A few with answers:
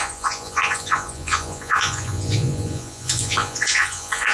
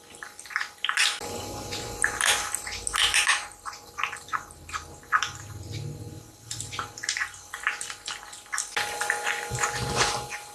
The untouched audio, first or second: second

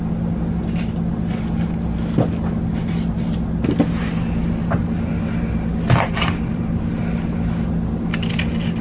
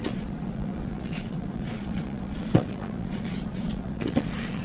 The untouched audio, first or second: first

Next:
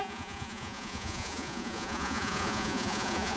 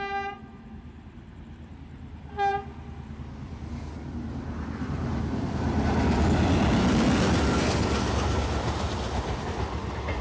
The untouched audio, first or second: second